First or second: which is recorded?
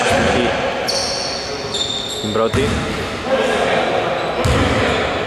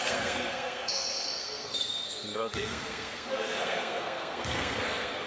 first